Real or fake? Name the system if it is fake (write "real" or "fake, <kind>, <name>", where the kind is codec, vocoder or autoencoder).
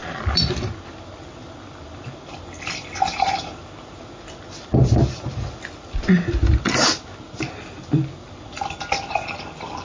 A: real